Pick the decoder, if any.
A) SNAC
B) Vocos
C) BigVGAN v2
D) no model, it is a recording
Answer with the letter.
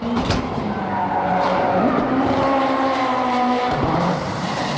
C